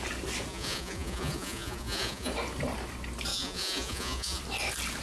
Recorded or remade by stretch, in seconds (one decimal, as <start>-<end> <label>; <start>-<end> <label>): 0.0-0.5 recorded; 0.5-2.3 remade; 2.3-3.3 recorded; 3.3-4.4 remade; 4.4-5.0 recorded